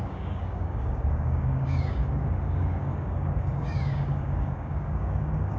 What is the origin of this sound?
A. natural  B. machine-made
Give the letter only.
B